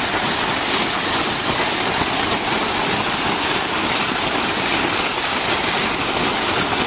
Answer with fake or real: real